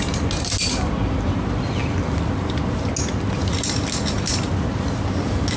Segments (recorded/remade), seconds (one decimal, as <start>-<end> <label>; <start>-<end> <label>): 0.0-5.6 recorded

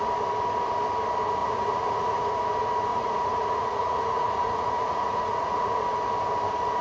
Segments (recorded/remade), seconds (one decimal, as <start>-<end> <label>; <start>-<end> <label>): 0.0-1.4 recorded; 1.4-2.3 remade; 2.3-2.9 recorded; 2.9-5.8 remade; 5.8-6.8 recorded